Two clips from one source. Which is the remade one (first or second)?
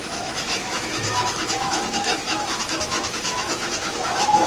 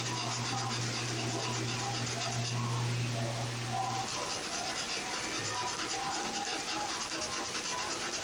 first